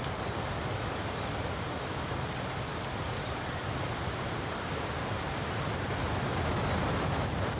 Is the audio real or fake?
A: real